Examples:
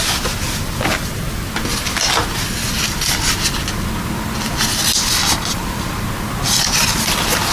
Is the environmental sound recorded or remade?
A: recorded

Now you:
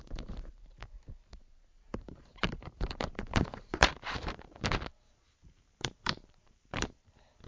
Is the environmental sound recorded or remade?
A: remade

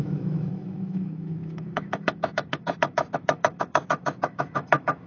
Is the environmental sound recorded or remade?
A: remade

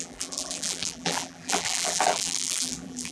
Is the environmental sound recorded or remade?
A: remade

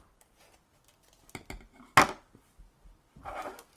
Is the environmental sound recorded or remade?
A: recorded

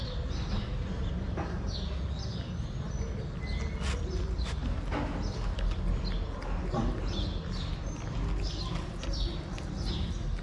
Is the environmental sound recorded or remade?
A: recorded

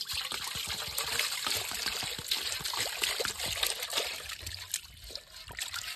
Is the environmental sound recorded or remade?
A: recorded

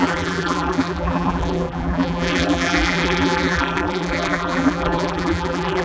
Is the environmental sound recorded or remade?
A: remade